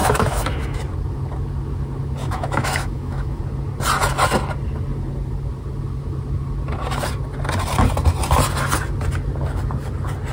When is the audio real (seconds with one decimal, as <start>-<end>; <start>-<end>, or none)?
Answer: 0.8-2.2; 3.4-10.3